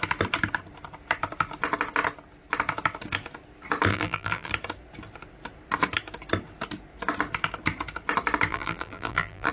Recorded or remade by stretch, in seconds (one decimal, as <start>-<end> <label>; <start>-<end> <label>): 0.0-3.9 recorded; 3.9-4.5 remade; 4.5-8.5 recorded; 8.5-9.5 remade